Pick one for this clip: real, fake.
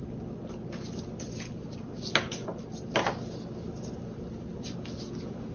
real